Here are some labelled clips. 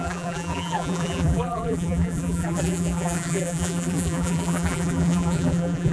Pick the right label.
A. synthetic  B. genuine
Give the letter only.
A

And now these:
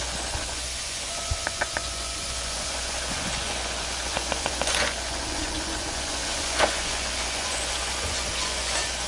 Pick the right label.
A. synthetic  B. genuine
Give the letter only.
A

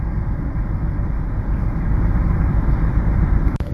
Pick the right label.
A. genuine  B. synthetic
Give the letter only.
B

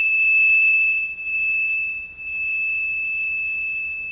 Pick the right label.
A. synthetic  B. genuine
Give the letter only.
B